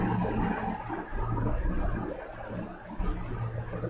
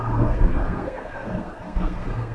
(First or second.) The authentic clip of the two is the first